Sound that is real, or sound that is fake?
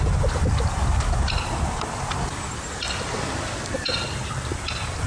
real